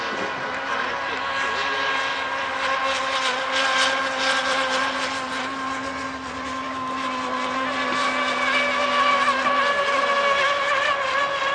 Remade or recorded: recorded